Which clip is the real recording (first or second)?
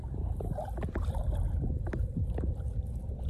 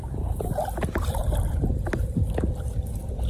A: second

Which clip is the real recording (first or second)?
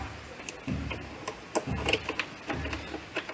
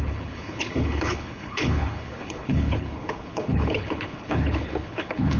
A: first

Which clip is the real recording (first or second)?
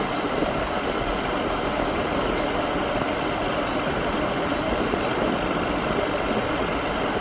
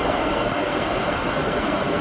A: first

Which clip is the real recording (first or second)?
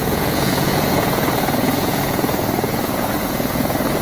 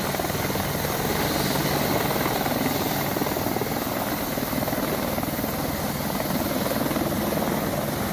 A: second